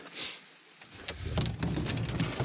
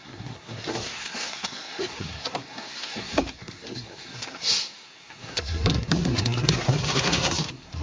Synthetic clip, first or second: second